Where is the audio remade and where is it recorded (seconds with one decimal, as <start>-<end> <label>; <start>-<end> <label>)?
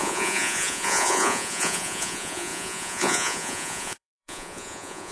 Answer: 0.0-5.1 remade